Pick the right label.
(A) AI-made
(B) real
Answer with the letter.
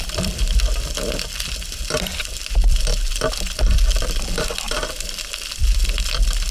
A